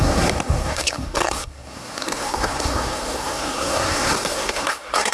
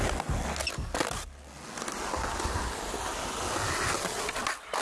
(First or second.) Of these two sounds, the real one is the second